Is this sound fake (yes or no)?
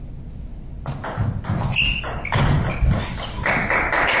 no